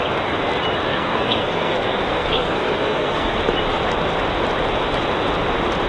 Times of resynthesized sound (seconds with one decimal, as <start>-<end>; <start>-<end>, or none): 0.9-3.4